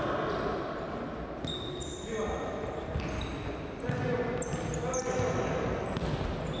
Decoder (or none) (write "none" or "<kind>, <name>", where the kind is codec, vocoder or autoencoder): none